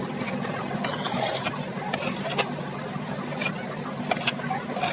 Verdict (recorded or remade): recorded